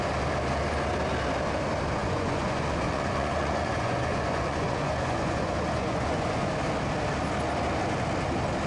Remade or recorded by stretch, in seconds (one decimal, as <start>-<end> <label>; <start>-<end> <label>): 0.0-2.0 recorded; 2.0-6.5 remade; 6.5-8.7 recorded